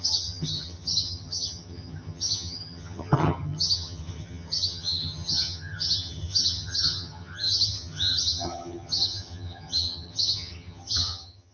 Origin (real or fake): fake